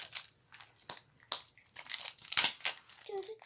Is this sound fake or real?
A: real